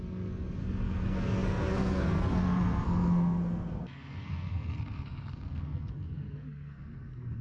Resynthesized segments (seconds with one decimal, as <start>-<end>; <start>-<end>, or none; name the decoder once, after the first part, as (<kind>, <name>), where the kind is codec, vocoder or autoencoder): 0.0-7.4 (codec, SNAC)